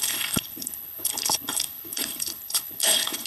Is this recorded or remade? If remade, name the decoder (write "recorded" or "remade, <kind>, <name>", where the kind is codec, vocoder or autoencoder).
remade, codec, HILCodec